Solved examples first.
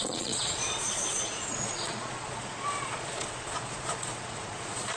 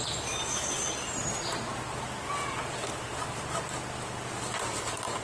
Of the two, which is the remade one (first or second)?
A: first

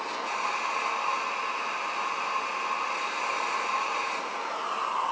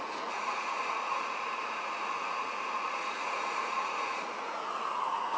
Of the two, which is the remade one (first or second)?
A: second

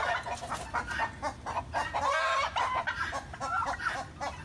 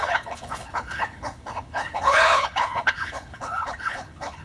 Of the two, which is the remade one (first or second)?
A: second